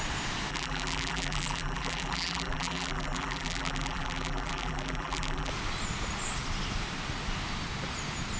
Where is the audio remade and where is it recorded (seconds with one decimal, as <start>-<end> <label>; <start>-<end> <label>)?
0.0-0.5 recorded; 0.5-5.5 remade; 5.5-8.4 recorded